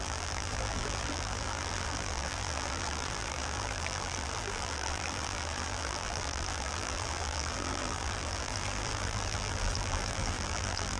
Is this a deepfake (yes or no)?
yes